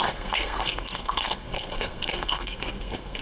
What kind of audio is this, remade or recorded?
remade